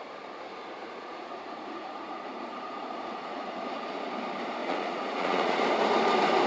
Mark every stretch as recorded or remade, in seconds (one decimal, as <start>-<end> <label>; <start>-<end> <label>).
0.0-0.8 recorded; 0.8-3.7 remade; 3.7-4.6 recorded; 4.6-5.6 remade; 5.6-6.5 recorded